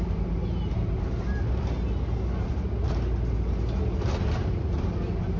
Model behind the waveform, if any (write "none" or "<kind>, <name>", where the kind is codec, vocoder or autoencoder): none